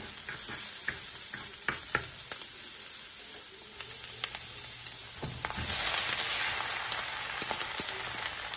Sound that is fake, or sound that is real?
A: real